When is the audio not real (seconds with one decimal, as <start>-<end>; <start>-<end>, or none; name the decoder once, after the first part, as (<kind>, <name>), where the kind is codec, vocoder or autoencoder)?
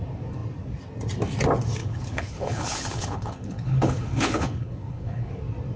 1.8-5.3 (codec, HILCodec)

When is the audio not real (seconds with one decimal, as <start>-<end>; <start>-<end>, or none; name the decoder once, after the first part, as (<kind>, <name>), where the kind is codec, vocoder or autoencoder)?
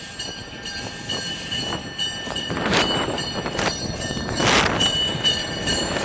0.0-1.8 (vocoder, BigVGAN v2); 2.3-4.4; 5.1-6.0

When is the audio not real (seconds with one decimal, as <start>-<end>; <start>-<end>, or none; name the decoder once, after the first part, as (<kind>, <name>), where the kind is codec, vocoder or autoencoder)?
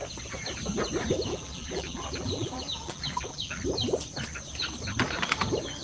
1.3-3.6 (vocoder, BigVGAN v2)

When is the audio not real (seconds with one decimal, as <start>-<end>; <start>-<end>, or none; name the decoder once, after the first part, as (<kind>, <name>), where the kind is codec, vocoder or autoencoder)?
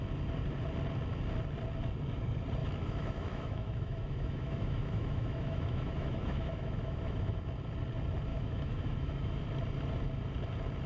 2.6-7.4 (autoencoder, DAC-VAE); 8.3-9.4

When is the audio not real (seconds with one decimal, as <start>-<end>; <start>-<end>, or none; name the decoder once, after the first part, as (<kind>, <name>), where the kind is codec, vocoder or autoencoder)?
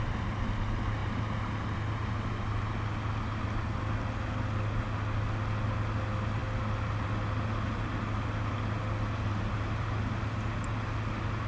none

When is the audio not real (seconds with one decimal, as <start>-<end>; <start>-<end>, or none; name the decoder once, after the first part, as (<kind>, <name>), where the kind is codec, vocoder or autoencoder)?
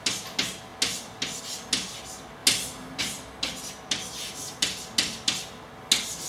none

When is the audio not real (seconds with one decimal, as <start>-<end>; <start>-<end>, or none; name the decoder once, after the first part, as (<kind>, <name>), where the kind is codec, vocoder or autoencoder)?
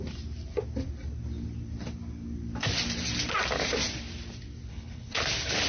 4.7-5.2 (codec, HILCodec)